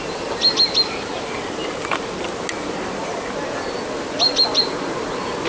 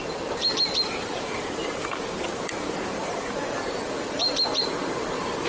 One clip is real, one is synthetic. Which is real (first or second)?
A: first